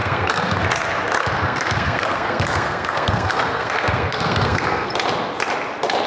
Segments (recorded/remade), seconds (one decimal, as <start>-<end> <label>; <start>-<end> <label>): 0.0-0.6 remade; 0.6-1.2 recorded; 1.2-4.9 remade; 4.9-6.1 recorded

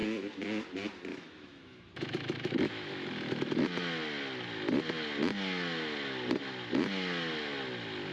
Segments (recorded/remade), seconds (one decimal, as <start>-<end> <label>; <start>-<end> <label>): 0.0-1.1 recorded; 1.1-3.6 remade; 3.6-8.1 recorded